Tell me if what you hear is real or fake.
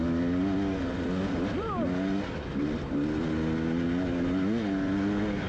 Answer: real